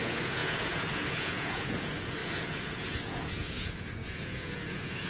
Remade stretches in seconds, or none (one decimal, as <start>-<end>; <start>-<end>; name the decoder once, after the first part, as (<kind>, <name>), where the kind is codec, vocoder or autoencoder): 0.0-5.1 (vocoder, Vocos)